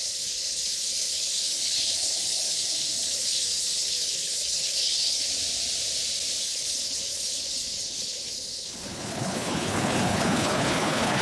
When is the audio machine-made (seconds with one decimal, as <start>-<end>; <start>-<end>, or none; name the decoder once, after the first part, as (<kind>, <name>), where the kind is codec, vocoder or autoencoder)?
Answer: 0.0-5.3 (codec, HILCodec); 6.4-11.2